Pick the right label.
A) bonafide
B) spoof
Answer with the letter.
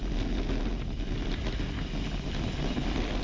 A